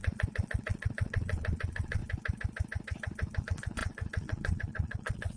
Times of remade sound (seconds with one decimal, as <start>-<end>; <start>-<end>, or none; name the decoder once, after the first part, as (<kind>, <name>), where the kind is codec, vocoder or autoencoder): 0.0-2.0 (vocoder, Vocos); 3.4-5.4